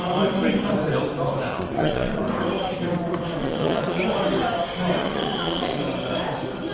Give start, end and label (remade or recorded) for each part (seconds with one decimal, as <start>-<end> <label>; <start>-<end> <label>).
0.0-1.5 recorded; 1.5-2.2 remade; 2.2-3.4 recorded; 3.4-4.0 remade; 4.0-5.0 recorded; 5.0-5.8 remade; 5.8-6.7 recorded